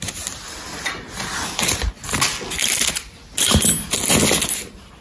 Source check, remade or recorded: recorded